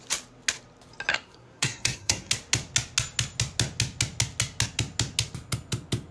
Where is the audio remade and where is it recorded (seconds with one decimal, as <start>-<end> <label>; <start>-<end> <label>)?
0.0-1.1 recorded; 1.1-2.3 remade; 2.3-6.1 recorded